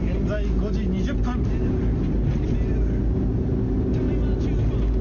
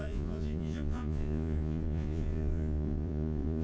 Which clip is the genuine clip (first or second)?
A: first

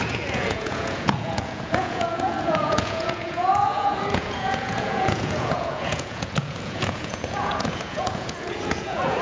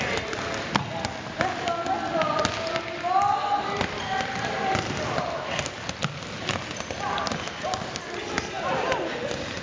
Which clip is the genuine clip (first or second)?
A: second